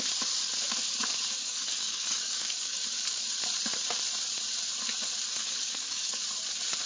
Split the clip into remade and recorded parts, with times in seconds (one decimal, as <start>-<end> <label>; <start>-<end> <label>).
0.0-1.4 recorded; 1.4-3.2 remade; 3.2-5.4 recorded; 5.4-6.2 remade; 6.2-6.9 recorded